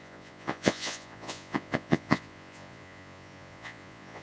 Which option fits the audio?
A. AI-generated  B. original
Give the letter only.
A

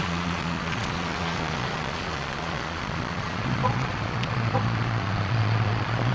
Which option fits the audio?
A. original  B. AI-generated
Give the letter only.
B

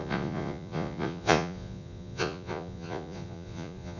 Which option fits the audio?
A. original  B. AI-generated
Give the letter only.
B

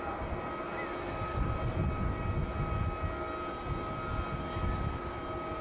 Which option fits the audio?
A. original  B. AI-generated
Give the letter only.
A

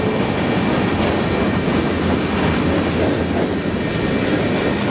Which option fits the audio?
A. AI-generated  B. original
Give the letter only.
B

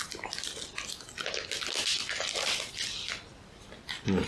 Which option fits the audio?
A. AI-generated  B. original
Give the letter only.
B